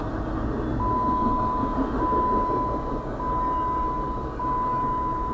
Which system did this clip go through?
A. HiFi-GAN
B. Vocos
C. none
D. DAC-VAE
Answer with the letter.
C